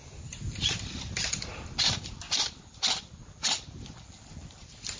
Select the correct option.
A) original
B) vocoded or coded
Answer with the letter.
A